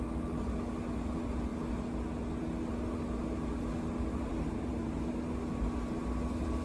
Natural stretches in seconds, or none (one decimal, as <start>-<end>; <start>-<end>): 0.0-4.3; 5.1-6.6